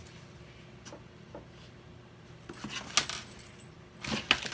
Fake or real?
real